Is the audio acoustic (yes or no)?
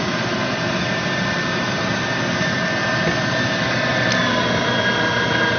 yes